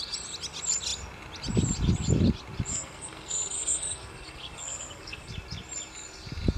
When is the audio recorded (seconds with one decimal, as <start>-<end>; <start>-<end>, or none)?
0.0-2.7; 5.3-6.6

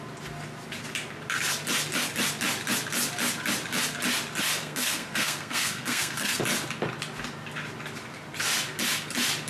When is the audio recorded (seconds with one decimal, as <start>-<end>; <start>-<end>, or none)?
0.0-4.6; 6.4-9.5